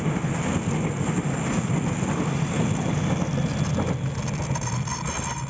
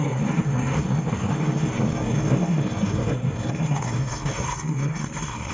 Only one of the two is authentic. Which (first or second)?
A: first